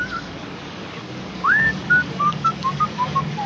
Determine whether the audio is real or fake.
fake